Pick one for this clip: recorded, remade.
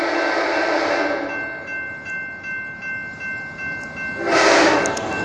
recorded